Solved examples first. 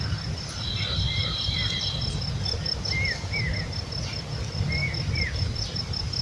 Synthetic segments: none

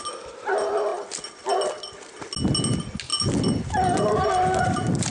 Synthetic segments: none

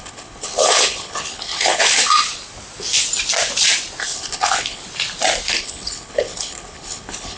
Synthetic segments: 0.0-2.0 (codec, HILCodec); 4.0-4.8; 5.6-7.4

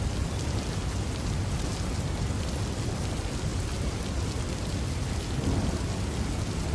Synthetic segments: 3.5-4.0 (vocoder, BigVGAN v2)

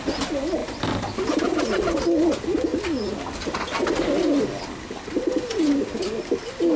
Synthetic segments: none

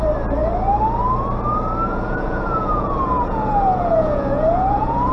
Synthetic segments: 1.9-5.1 (vocoder, Vocos)